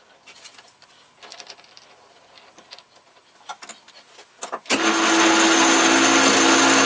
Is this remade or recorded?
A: recorded